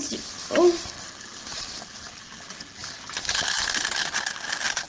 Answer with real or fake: real